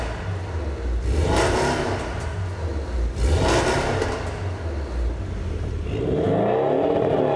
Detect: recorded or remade recorded